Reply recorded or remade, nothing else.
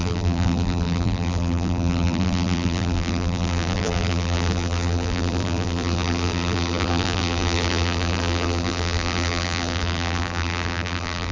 remade